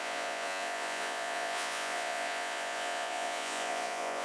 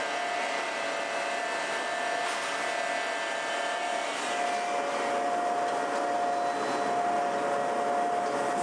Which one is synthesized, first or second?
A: first